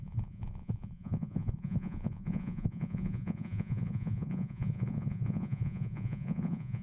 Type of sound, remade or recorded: remade